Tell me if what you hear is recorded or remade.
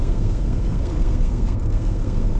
remade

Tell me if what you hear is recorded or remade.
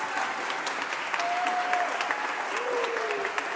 recorded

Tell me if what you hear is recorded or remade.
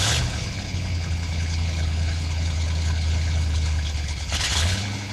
remade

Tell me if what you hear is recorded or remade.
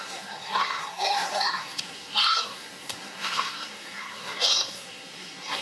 remade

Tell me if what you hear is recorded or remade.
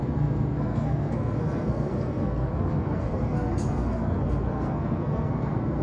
remade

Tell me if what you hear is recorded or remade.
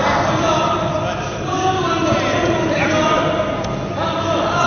recorded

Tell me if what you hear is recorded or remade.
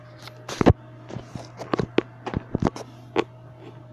recorded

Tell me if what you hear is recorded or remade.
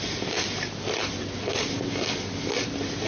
recorded